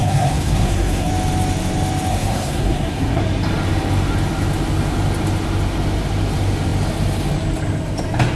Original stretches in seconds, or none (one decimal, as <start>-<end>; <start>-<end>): 1.1-2.1; 3.2-8.4